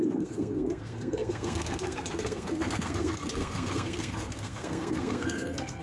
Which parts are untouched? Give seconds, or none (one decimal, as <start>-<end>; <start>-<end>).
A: none